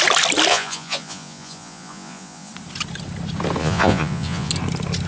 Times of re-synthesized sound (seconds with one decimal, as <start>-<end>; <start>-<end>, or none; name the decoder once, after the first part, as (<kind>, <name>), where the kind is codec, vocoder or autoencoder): 0.5-2.5 (vocoder, Vocos); 3.6-4.5